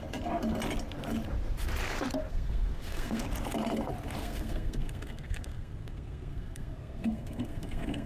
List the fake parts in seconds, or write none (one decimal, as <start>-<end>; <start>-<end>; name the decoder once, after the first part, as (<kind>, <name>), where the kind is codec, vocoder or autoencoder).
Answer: 2.3-3.2 (codec, SNAC); 4.2-8.1